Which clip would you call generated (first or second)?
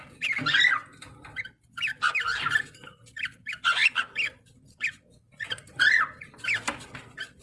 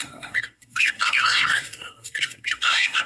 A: second